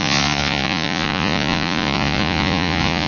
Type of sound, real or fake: fake